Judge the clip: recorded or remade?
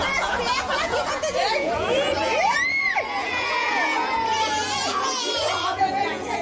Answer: remade